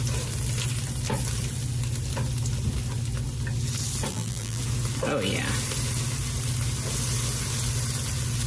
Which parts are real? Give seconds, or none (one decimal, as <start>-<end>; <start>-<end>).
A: 0.0-4.1; 4.6-8.5